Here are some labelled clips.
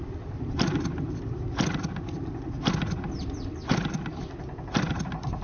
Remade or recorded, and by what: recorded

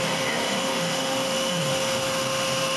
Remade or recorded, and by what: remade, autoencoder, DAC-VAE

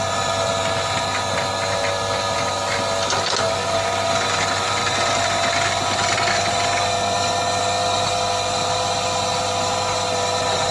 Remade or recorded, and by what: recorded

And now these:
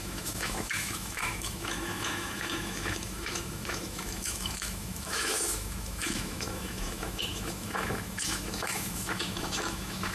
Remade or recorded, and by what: remade, autoencoder, DAC-VAE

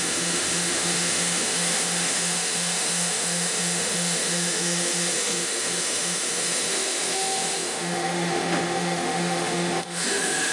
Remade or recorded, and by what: remade, autoencoder, DAC-VAE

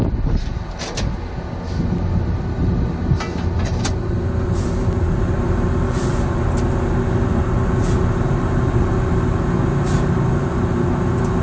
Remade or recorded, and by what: recorded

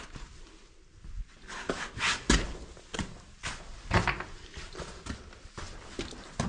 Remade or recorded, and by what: recorded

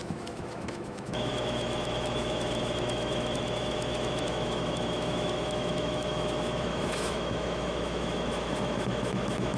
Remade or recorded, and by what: remade, autoencoder, DAC-VAE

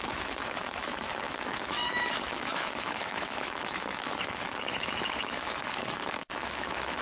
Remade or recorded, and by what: remade, autoencoder, DAC-VAE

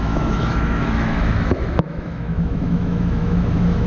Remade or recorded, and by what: remade, autoencoder, DAC-VAE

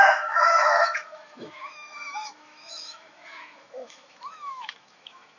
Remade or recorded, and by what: remade, autoencoder, DAC-VAE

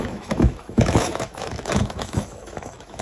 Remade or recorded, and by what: remade, autoencoder, DAC-VAE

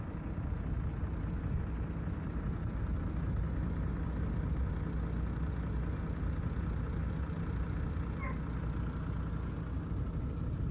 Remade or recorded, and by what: recorded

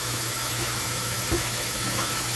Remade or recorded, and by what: remade, autoencoder, DAC-VAE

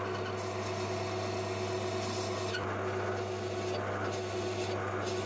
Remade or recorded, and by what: recorded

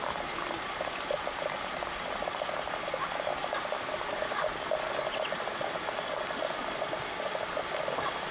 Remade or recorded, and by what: recorded